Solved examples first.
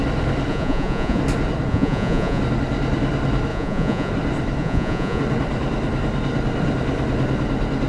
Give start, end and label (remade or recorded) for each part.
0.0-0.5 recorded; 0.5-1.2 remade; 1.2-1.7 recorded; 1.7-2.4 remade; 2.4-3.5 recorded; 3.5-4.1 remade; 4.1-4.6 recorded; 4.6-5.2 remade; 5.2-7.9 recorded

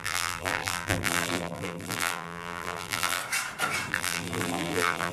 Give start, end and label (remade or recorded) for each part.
0.0-3.2 remade; 3.2-3.9 recorded; 3.9-5.1 remade

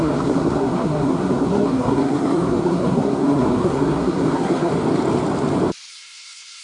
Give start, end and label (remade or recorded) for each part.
0.0-4.7 remade; 4.7-5.9 recorded; 5.9-6.6 remade

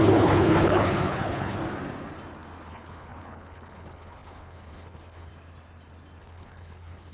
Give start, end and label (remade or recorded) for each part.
0.0-1.6 remade; 1.6-2.7 recorded; 2.7-5.3 remade; 5.3-6.2 recorded; 6.2-7.1 remade

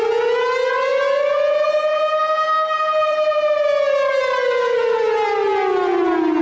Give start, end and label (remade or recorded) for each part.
0.0-5.4 remade; 5.4-6.4 recorded

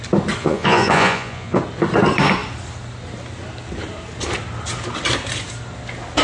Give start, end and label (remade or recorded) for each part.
0.0-0.4 recorded; 0.4-1.6 remade; 1.6-6.2 recorded